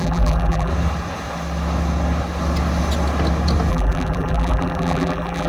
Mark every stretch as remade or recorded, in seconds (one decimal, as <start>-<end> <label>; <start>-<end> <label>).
0.0-0.7 remade; 0.7-3.7 recorded; 3.7-5.5 remade